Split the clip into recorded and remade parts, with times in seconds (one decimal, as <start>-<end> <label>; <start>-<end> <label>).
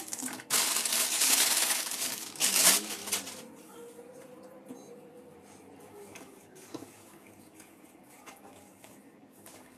0.0-3.0 remade; 3.0-5.9 recorded; 5.9-9.8 remade